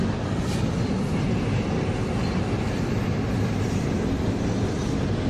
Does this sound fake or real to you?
real